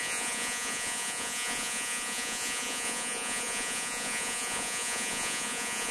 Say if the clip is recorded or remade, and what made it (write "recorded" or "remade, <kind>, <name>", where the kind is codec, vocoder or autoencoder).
remade, vocoder, Vocos